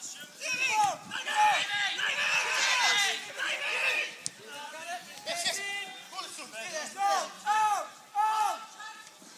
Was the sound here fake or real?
real